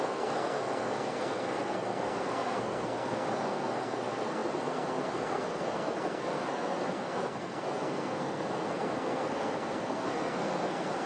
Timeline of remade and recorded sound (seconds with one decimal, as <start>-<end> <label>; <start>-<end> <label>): 0.0-11.1 remade